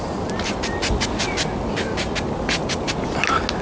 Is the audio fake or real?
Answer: real